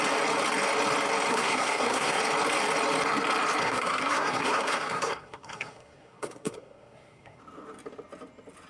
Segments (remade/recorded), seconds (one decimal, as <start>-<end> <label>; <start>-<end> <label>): 0.0-1.3 recorded; 1.3-2.2 remade; 2.2-3.6 recorded; 3.6-7.4 remade; 7.4-8.7 recorded